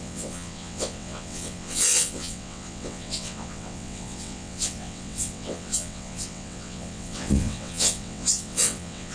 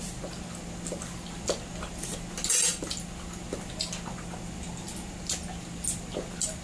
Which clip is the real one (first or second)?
second